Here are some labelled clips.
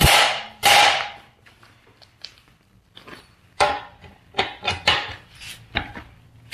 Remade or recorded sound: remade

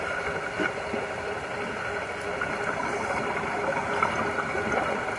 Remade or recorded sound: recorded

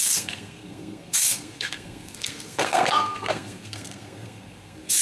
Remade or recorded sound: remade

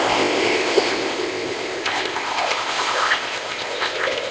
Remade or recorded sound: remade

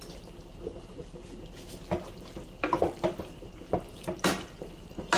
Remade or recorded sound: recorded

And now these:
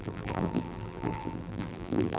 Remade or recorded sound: remade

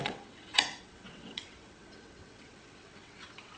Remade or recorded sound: remade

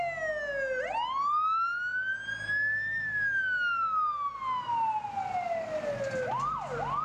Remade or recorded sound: recorded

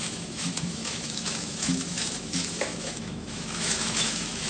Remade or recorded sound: remade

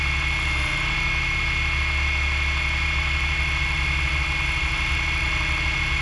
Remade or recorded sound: recorded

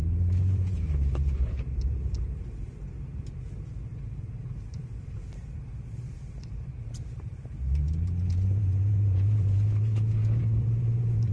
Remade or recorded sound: remade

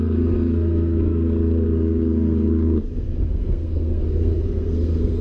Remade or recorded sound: remade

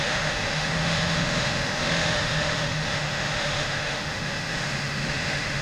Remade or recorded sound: remade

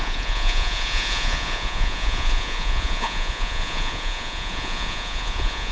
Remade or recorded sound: remade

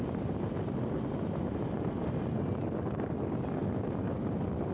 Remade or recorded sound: recorded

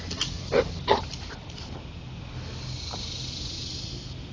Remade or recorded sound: recorded